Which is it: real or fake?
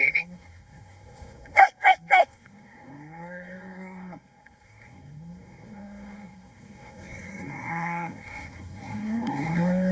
fake